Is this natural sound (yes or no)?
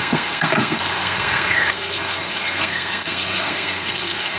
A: no